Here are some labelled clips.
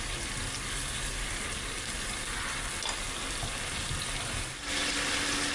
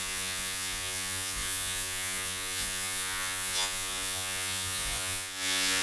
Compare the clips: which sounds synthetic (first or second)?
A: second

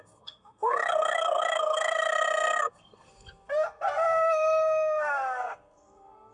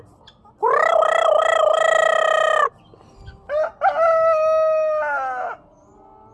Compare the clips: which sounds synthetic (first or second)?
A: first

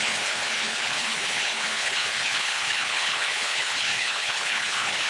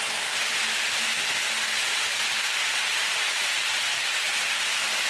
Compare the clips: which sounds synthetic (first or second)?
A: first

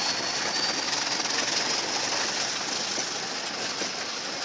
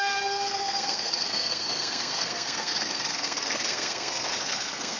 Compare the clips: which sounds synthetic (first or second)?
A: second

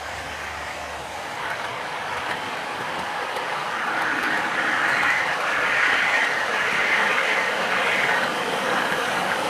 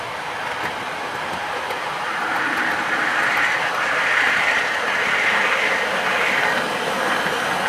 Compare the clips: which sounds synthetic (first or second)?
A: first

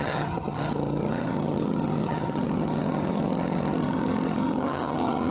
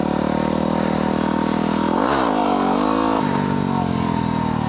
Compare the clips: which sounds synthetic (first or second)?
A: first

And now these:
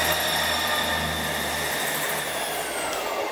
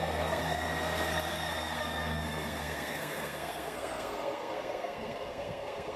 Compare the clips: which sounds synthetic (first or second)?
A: second